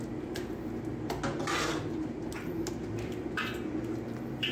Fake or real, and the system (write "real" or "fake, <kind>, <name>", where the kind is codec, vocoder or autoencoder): real